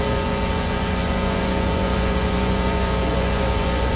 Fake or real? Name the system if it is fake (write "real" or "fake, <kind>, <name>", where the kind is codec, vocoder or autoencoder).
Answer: fake, vocoder, Vocos